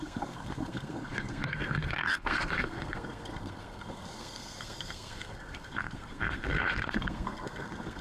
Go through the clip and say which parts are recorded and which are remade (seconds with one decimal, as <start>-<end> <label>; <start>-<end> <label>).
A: 0.0-8.0 remade